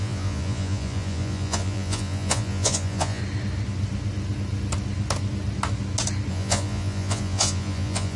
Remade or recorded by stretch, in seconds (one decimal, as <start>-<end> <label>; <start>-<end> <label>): 0.0-3.2 remade; 3.2-6.3 recorded; 6.3-8.2 remade